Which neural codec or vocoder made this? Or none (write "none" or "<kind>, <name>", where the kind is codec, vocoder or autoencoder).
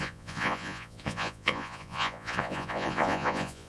vocoder, Vocos